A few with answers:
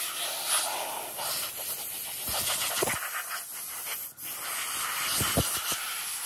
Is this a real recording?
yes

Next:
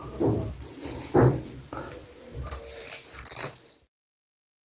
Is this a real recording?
no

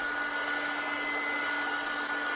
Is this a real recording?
yes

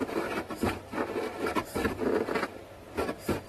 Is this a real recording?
no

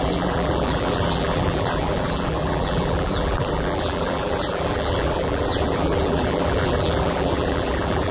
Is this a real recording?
no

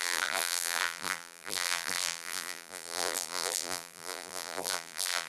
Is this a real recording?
no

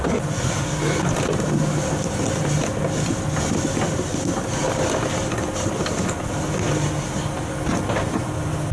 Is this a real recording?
no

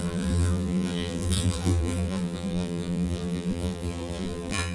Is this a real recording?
no